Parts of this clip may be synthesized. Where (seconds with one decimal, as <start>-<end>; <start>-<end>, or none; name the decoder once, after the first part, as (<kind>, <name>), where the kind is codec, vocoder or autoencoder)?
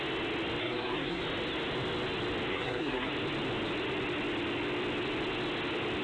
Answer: 0.6-1.2 (codec, SNAC); 2.5-3.1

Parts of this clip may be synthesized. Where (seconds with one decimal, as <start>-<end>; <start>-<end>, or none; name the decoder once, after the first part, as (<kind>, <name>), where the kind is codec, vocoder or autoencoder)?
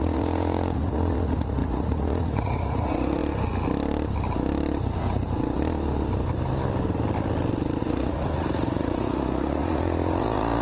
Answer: 0.0-3.2 (vocoder, Vocos); 7.8-10.6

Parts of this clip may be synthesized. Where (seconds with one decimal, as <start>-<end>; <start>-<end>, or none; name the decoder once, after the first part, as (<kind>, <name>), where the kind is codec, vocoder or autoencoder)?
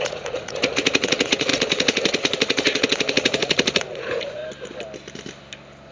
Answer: 0.0-4.4 (vocoder, Vocos)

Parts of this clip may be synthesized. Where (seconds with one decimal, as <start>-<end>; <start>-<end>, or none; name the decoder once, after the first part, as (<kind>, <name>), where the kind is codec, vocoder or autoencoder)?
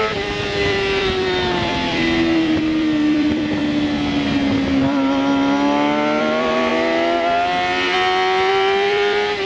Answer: 0.0-3.6 (vocoder, BigVGAN v2); 6.2-6.7; 8.5-9.5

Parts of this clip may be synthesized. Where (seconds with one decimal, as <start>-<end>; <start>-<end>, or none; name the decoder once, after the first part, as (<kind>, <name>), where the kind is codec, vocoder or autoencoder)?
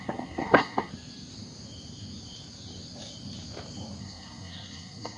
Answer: 0.0-0.9 (codec, SNAC); 4.0-5.2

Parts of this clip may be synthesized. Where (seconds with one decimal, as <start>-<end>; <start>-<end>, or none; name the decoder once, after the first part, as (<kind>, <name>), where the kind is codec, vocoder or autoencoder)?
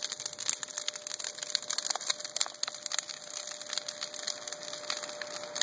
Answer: none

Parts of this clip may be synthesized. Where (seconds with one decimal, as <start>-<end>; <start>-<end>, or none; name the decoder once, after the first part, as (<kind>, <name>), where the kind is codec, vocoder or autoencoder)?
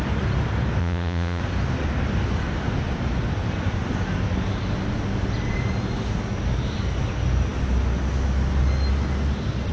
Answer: 0.8-1.4 (vocoder, Vocos)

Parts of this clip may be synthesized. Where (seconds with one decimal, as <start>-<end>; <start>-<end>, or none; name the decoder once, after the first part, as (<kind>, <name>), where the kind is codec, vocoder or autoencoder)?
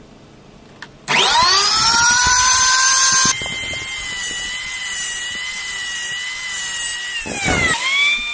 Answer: 1.8-3.0 (vocoder, BigVGAN v2); 4.2-6.1